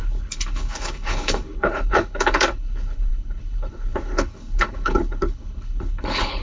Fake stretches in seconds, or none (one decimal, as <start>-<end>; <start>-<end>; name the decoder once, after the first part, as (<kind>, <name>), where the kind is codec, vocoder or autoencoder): 0.0-6.4 (codec, HILCodec)